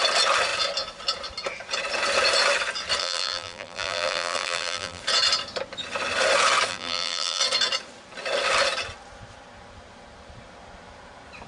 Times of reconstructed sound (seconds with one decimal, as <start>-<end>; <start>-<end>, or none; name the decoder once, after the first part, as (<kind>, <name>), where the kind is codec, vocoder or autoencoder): 3.0-5.0 (vocoder, BigVGAN v2); 6.7-7.4